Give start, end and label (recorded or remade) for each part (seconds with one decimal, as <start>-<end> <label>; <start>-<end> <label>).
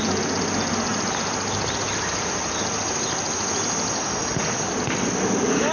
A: 0.0-5.7 recorded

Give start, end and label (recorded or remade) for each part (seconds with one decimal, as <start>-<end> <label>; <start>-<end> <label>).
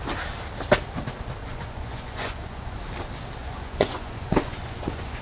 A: 0.0-1.4 recorded; 1.4-2.8 remade; 2.8-3.4 recorded; 3.4-5.2 remade